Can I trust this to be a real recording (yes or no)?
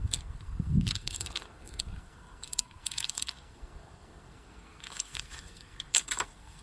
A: no